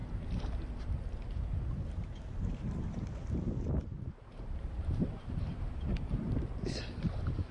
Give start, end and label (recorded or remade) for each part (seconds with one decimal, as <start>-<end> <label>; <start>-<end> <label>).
0.0-3.9 recorded; 3.9-6.3 remade; 6.3-7.5 recorded